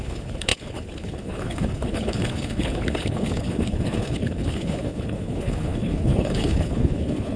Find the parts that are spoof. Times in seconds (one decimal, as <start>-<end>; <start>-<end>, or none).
0.0-7.4